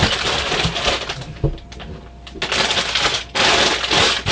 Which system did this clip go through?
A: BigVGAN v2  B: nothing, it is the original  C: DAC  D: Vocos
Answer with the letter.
B